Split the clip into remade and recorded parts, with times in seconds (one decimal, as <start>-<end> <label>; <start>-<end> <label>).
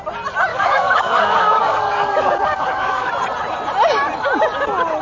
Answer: 0.0-0.5 recorded; 0.5-3.1 remade; 3.1-5.0 recorded